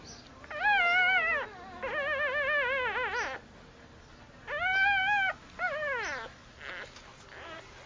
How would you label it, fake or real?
real